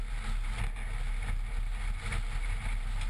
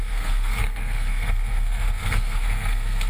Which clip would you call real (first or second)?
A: first